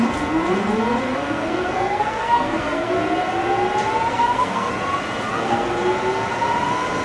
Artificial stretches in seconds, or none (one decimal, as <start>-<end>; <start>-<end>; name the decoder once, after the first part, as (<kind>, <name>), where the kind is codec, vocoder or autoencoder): 1.1-2.9 (codec, SNAC); 4.1-4.7; 5.3-5.8